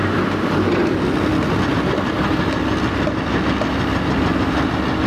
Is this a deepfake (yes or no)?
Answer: no